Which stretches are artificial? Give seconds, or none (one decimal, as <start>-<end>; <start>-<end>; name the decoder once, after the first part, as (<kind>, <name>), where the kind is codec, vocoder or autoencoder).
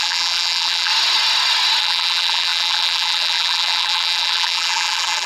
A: 0.0-0.9 (vocoder, BigVGAN v2); 1.8-5.3